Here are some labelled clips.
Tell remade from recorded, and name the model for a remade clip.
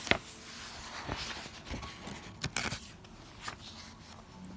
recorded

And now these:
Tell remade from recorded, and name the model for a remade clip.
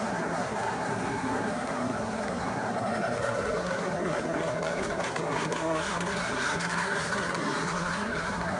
remade, codec, SNAC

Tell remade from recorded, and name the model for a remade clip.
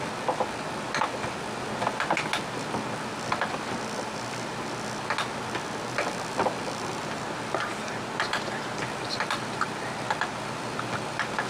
recorded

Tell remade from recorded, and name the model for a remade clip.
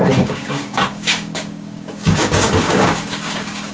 remade, codec, DAC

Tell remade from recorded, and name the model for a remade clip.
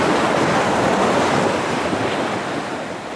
recorded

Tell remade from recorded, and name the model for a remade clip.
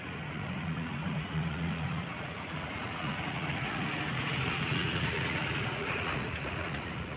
remade, vocoder, Vocos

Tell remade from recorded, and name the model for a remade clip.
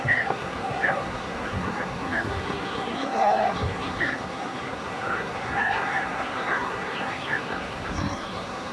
remade, codec, SNAC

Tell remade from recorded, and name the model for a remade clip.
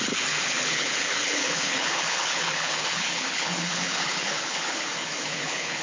remade, codec, HILCodec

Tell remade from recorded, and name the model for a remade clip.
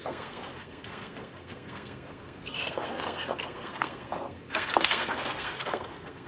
remade, codec, SNAC